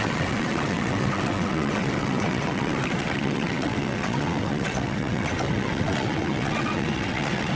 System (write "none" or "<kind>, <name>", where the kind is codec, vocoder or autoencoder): vocoder, WaveNeXt